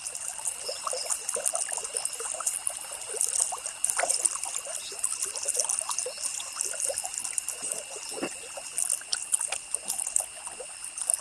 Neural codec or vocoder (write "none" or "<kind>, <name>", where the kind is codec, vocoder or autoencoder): none